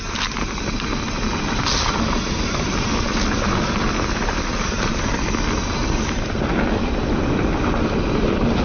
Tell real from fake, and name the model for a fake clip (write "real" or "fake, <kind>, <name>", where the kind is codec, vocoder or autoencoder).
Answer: real